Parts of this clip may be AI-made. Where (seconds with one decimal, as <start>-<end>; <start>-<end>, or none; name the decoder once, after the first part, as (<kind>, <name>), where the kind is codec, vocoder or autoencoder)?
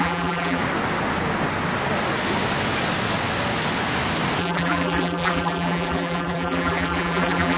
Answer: 0.0-0.6 (vocoder, BigVGAN v2); 4.4-7.6